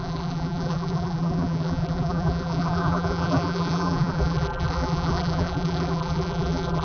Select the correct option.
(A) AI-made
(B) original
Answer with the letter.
A